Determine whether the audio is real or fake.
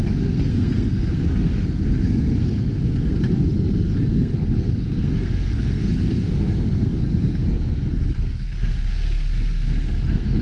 fake